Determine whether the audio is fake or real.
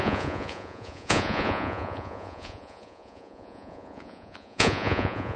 fake